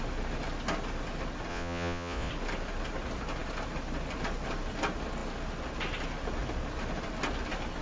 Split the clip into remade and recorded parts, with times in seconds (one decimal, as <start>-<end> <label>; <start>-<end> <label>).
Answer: 0.0-1.5 recorded; 1.5-2.3 remade; 2.3-7.8 recorded

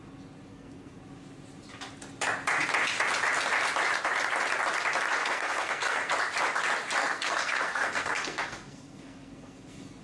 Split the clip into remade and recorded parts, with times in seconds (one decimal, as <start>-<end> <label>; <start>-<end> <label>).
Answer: 0.0-0.5 recorded; 0.5-1.0 remade; 1.0-5.2 recorded; 5.2-6.1 remade; 6.1-7.0 recorded; 7.0-10.0 remade